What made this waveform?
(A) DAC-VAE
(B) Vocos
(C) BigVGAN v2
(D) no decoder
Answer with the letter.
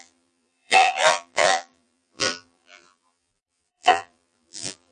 C